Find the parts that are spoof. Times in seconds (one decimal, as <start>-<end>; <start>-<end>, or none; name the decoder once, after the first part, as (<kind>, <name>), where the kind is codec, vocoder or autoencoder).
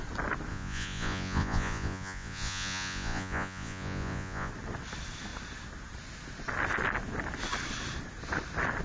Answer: 0.5-4.5 (vocoder, Vocos)